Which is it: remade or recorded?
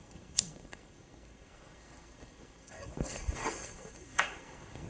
remade